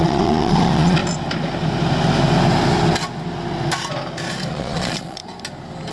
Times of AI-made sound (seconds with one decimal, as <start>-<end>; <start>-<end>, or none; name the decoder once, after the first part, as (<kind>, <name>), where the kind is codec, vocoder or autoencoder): 0.0-1.0 (vocoder, Vocos); 4.5-5.2